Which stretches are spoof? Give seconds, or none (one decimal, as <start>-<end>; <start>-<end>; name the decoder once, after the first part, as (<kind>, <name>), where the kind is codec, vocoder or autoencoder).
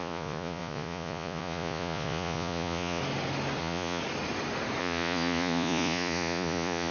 0.0-3.0 (vocoder, Vocos); 3.6-4.0; 4.8-6.9